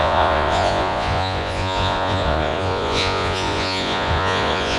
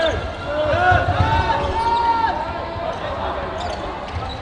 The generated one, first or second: first